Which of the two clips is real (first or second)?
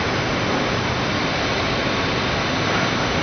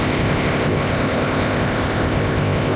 first